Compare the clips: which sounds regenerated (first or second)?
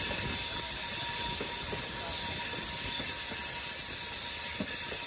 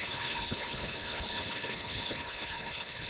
second